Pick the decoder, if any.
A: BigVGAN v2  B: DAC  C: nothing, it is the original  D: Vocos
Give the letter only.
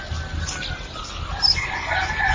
C